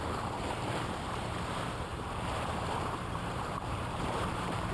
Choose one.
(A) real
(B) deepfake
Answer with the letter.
B